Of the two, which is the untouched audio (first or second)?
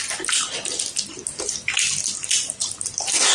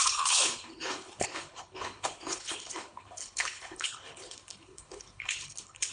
first